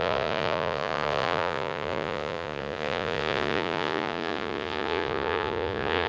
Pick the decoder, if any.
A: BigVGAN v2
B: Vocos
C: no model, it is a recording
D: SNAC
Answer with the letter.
B